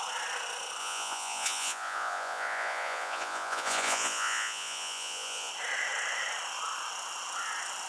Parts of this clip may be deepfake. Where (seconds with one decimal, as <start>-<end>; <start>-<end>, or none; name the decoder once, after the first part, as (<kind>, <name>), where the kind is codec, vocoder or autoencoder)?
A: 0.8-5.5 (vocoder, Vocos)